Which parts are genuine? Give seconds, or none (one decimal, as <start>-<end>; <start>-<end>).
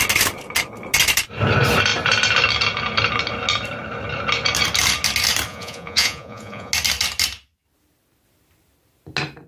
0.0-5.5; 6.7-9.5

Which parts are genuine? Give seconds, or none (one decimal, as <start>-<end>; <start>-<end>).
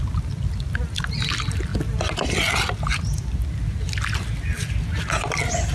0.0-5.7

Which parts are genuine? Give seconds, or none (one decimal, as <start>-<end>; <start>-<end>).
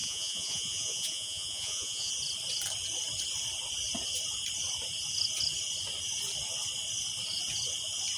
2.1-8.2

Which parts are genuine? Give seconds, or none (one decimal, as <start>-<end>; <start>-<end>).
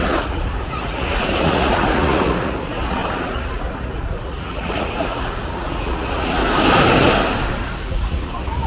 6.4-7.8